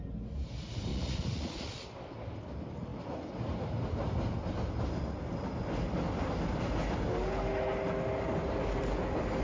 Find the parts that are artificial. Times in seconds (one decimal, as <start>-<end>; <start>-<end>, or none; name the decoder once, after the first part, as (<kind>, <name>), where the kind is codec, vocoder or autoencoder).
0.9-1.7 (vocoder, Vocos)